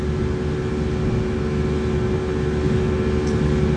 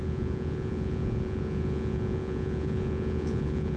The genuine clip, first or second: first